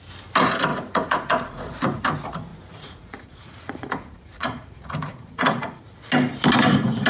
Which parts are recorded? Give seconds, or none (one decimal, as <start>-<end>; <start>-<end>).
0.0-0.7; 2.0-2.5; 5.8-7.1

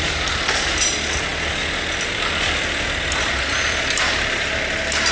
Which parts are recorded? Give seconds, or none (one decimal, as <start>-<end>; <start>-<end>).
0.0-5.1

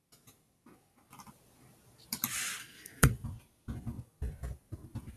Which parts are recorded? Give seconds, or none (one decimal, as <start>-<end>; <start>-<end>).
0.0-2.6; 3.1-5.2

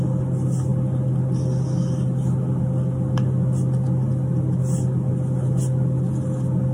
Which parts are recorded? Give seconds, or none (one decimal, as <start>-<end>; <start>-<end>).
0.0-6.7